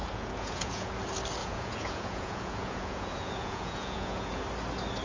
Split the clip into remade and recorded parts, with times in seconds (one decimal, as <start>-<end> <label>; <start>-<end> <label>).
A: 0.0-0.9 remade; 0.9-1.4 recorded; 1.4-4.4 remade; 4.4-5.0 recorded